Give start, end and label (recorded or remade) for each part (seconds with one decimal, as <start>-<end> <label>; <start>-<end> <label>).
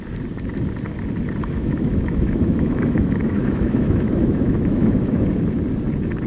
0.0-1.4 recorded; 1.4-5.2 remade; 5.2-6.3 recorded